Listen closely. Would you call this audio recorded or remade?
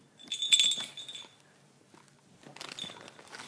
recorded